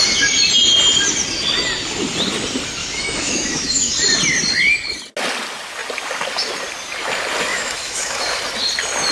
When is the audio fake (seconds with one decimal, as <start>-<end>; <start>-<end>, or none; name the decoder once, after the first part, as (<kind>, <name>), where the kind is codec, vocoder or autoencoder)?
2.8-3.9 (autoencoder, DAC-VAE); 7.5-8.4